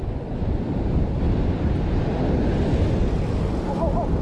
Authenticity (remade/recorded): recorded